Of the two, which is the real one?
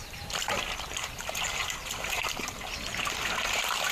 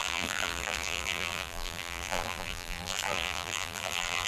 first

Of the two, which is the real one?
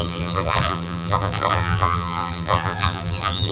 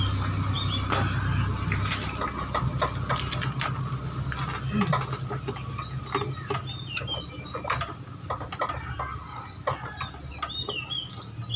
second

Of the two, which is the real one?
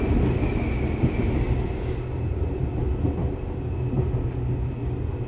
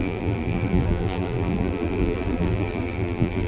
first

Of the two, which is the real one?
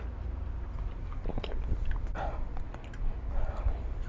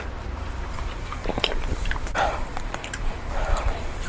first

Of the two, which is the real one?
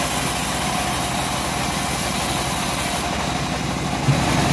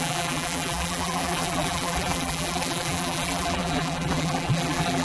first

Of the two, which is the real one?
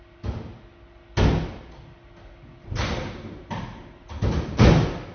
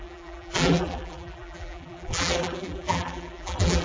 first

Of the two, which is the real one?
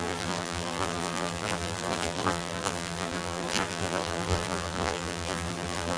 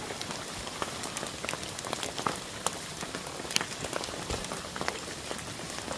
second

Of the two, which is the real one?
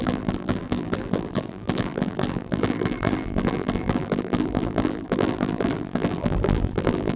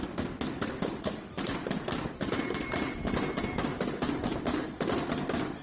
second